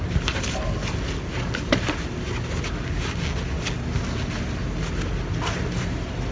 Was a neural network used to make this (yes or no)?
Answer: no